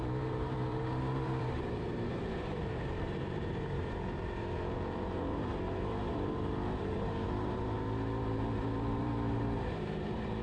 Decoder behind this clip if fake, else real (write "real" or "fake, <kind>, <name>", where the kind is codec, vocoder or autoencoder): fake, vocoder, BigVGAN v2